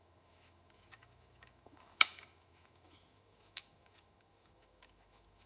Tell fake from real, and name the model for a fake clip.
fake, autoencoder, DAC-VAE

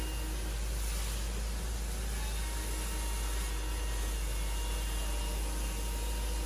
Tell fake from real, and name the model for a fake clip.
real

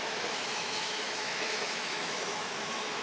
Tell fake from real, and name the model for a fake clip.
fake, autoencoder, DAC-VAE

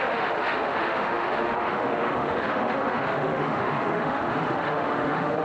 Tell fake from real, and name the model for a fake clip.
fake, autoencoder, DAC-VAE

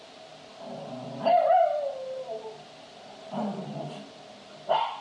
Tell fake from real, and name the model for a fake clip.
real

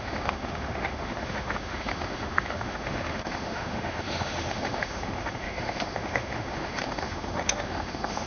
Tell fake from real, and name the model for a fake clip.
fake, autoencoder, DAC-VAE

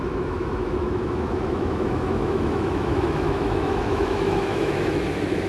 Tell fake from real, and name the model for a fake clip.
fake, autoencoder, DAC-VAE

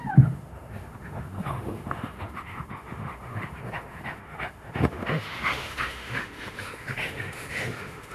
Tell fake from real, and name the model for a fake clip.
fake, autoencoder, DAC-VAE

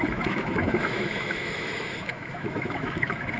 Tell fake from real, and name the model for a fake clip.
fake, autoencoder, DAC-VAE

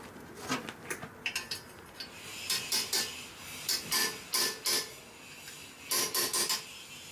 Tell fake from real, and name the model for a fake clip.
real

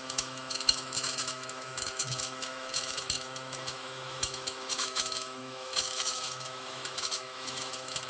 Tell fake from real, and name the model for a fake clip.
fake, autoencoder, DAC-VAE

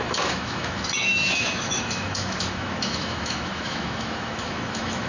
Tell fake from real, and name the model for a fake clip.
fake, autoencoder, DAC-VAE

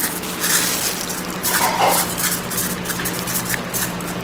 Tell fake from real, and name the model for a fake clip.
real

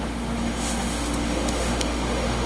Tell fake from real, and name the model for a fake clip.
fake, autoencoder, DAC-VAE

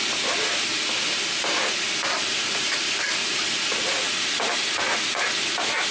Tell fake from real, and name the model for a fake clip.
real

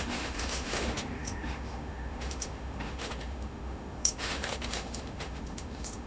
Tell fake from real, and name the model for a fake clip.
fake, autoencoder, DAC-VAE